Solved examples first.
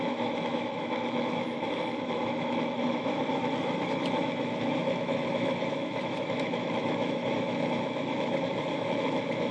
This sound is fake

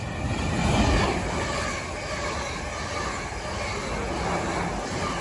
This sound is real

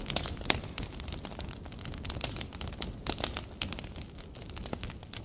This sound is real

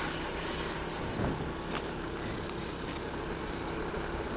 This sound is real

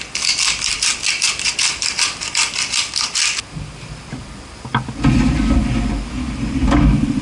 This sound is real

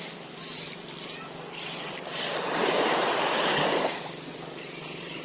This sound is fake